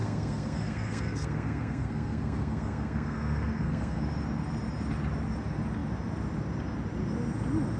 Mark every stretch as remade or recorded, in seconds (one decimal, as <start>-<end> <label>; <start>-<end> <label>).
0.0-4.0 remade; 4.0-7.8 recorded